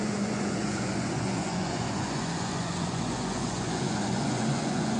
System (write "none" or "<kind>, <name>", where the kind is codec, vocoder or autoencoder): vocoder, Vocos